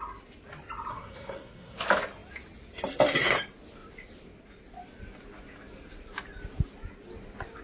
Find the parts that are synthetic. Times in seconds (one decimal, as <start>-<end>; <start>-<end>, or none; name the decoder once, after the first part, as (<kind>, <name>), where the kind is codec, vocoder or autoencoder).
0.9-1.8 (codec, SNAC)

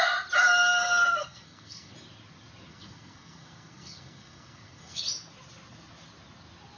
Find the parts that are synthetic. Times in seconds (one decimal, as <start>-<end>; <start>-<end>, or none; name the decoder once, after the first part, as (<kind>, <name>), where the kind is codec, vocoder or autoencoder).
1.2-1.9 (codec, SNAC); 2.7-5.0

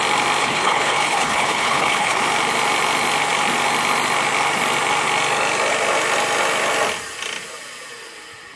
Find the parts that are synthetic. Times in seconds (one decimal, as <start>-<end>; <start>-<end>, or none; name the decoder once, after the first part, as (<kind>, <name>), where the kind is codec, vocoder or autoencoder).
0.4-2.2 (codec, HILCodec)

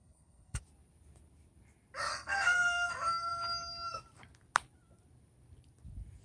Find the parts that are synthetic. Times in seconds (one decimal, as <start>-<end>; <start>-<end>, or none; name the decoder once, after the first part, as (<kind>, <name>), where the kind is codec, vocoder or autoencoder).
0.0-0.6 (codec, SNAC); 2.1-2.9

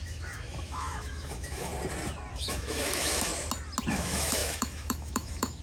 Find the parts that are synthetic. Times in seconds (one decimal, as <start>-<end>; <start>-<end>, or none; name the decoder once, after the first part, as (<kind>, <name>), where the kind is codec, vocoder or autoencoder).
0.0-1.7 (autoencoder, DAC-VAE); 2.3-3.3; 3.9-5.6